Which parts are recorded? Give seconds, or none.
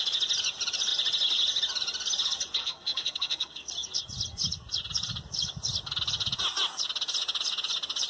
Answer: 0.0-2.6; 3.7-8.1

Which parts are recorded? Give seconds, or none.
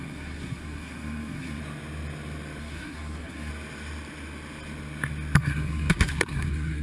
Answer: 1.6-2.6; 3.5-5.4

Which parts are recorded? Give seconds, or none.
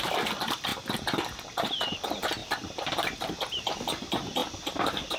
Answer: 0.0-5.2